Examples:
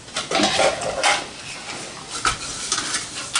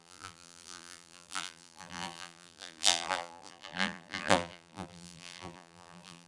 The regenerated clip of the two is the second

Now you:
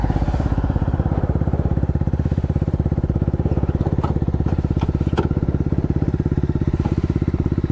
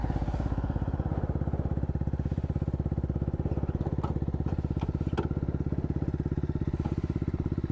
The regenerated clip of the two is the first